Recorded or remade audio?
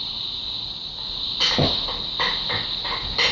recorded